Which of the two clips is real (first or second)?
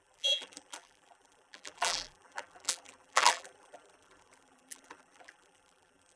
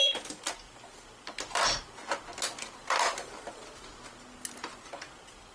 second